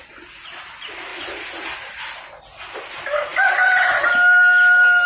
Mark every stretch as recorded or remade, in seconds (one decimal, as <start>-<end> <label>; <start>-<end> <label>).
0.0-5.1 recorded